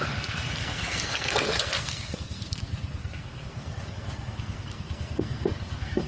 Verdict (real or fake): fake